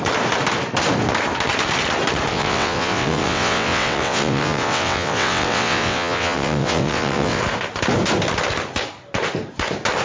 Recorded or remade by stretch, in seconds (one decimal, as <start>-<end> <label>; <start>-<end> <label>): 0.0-2.3 recorded; 2.3-7.4 remade; 7.4-10.0 recorded